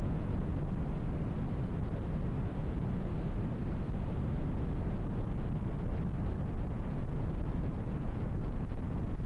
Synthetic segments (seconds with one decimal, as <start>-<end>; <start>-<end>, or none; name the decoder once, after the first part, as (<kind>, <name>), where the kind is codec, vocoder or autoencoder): 0.0-0.5 (vocoder, Vocos); 2.6-3.1; 6.6-9.3